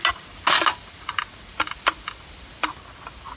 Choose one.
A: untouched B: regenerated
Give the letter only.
A